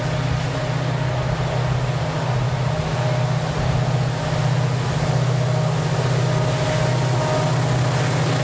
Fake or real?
real